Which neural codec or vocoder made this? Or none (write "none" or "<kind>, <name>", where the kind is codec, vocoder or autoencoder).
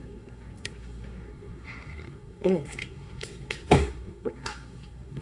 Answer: codec, SNAC